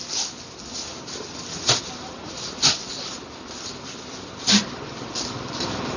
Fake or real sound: real